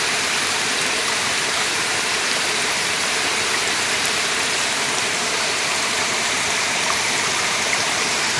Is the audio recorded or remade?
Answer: remade